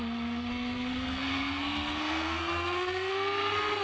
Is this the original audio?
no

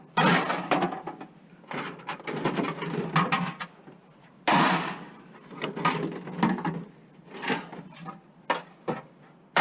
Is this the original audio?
yes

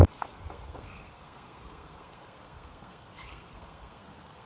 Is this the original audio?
no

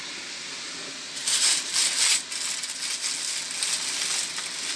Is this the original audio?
yes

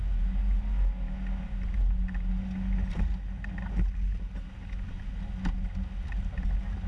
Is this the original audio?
yes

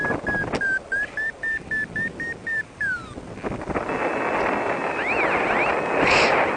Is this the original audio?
yes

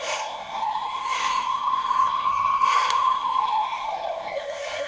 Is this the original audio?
no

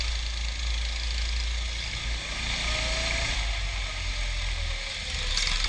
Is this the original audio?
yes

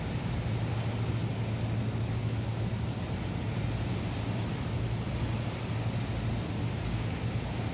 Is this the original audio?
yes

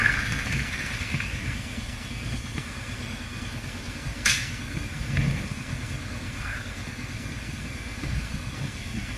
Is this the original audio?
no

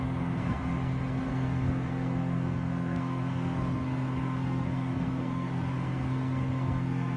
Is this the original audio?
no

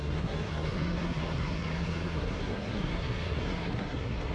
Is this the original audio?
no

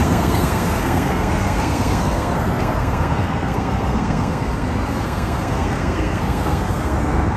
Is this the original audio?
no